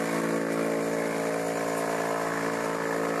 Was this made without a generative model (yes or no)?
yes